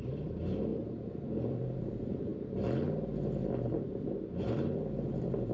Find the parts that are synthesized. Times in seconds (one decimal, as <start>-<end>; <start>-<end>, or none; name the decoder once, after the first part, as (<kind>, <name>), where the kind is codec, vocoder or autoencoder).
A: 0.0-2.3 (vocoder, BigVGAN v2); 4.4-5.5